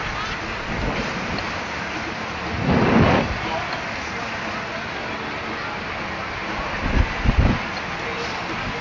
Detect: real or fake real